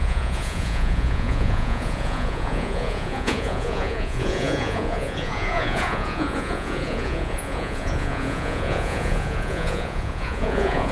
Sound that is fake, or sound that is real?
fake